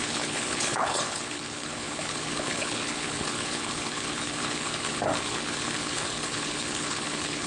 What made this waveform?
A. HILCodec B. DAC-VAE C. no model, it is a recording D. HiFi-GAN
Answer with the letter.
A